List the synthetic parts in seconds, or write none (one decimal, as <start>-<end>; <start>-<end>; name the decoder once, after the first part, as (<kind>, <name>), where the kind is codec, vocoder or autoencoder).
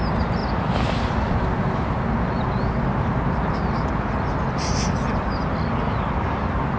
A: none